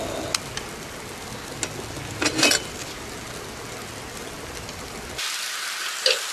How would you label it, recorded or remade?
recorded